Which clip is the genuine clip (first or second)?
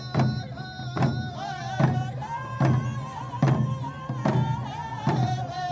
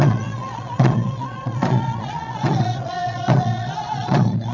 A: first